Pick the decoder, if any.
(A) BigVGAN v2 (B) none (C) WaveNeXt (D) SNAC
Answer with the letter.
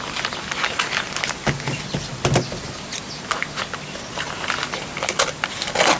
B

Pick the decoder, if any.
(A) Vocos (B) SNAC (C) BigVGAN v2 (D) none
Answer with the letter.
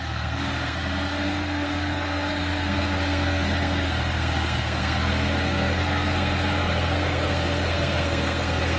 B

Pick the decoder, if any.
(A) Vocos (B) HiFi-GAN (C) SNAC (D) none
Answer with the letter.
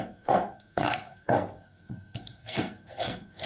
C